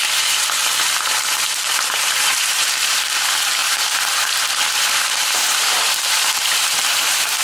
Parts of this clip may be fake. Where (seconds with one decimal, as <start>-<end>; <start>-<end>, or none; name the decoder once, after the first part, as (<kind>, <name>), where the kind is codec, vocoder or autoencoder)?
0.0-0.6 (vocoder, BigVGAN v2); 1.8-7.4

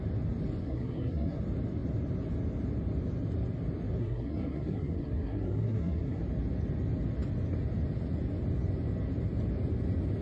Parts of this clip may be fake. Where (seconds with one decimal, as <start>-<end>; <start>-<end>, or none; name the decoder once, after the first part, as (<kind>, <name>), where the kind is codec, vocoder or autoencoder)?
0.6-1.4 (codec, SNAC); 4.0-6.2

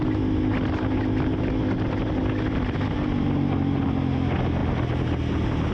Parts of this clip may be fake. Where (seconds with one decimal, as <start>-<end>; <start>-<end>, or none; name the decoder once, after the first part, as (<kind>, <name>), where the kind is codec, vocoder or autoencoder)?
none

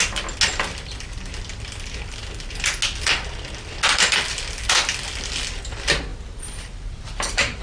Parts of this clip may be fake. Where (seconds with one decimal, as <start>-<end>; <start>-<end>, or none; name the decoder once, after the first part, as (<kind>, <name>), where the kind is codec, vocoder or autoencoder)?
6.1-7.6 (vocoder, BigVGAN v2)

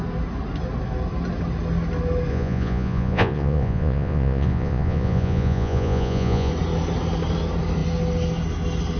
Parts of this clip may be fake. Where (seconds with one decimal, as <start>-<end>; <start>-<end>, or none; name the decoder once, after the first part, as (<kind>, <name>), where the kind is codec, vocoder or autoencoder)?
2.3-6.5 (vocoder, Vocos)

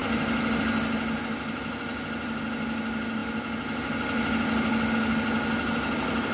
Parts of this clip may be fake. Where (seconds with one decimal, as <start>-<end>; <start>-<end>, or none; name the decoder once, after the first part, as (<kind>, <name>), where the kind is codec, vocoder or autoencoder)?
none

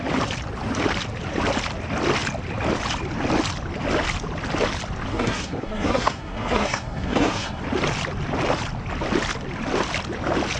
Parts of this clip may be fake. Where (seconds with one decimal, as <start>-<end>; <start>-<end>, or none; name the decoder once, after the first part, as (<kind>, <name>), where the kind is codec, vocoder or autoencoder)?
5.1-7.6 (codec, SNAC)

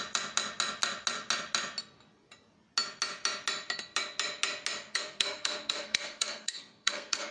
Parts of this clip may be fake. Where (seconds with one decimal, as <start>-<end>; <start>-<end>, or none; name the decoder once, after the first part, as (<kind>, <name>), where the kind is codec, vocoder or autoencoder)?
4.9-7.3 (codec, SNAC)